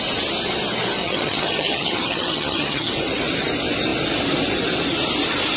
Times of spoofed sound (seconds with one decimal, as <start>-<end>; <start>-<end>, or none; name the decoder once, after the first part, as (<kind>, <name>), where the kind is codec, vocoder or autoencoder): 1.0-2.9 (vocoder, HiFi-GAN)